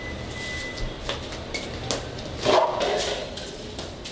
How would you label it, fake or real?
real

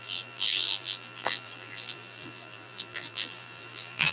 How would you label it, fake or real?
fake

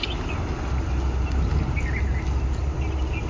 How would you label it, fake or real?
real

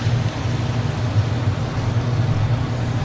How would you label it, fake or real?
real